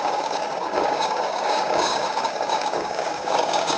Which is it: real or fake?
fake